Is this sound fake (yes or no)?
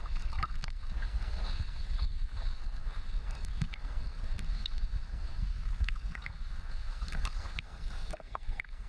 yes